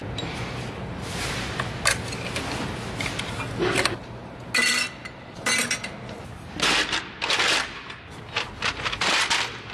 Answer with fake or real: real